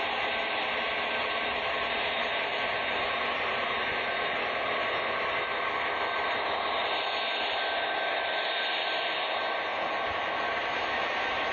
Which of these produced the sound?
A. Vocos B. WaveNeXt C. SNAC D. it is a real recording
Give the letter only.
D